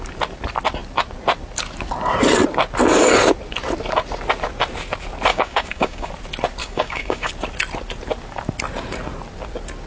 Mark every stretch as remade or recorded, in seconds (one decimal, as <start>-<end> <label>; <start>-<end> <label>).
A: 0.0-5.3 recorded; 5.3-6.1 remade; 6.1-6.6 recorded; 6.6-7.3 remade; 7.3-9.9 recorded